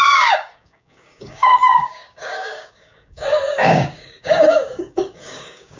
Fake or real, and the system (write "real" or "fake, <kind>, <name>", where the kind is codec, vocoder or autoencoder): fake, codec, DAC